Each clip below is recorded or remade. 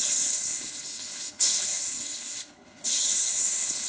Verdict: remade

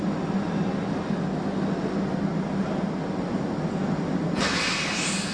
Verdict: recorded